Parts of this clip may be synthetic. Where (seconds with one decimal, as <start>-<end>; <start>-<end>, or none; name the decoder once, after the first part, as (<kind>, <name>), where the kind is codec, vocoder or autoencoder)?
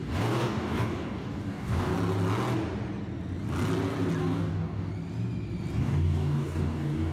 0.0-1.9 (codec, DAC); 4.2-4.9; 5.8-7.1